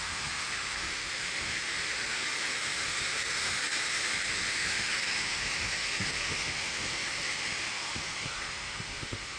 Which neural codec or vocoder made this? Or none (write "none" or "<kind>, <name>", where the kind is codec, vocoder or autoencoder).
autoencoder, DAC-VAE